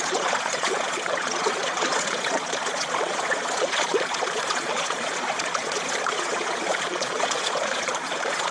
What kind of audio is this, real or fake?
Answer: fake